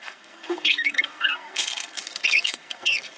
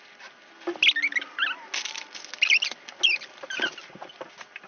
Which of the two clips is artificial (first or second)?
first